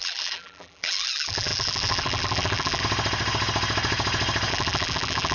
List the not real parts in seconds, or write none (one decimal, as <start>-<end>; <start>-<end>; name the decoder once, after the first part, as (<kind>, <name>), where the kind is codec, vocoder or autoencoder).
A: 0.0-2.8 (vocoder, BigVGAN v2); 4.5-5.3